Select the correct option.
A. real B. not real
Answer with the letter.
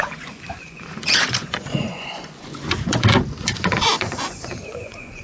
B